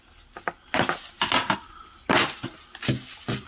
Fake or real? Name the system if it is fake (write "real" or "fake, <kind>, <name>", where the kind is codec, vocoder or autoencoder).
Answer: real